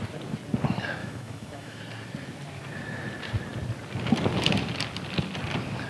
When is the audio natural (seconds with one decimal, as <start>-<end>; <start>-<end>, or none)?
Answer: 0.0-1.0; 1.8-5.9